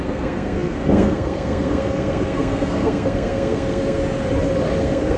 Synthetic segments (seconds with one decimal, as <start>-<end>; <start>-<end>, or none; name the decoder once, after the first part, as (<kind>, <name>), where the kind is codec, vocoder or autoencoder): 0.0-4.0 (codec, SNAC); 4.8-5.2